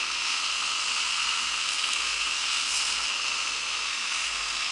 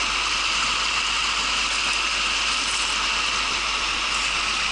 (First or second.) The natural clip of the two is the second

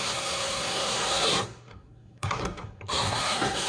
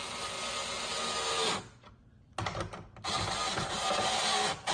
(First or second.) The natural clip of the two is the second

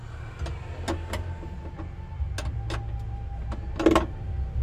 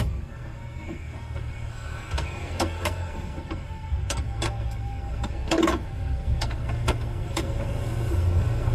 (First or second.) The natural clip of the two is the first